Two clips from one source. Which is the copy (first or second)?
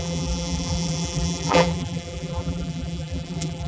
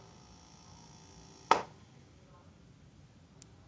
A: first